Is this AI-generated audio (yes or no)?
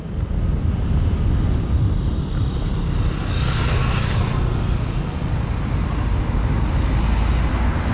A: no